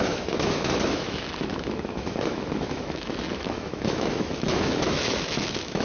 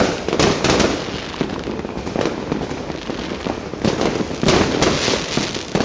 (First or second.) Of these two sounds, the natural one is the second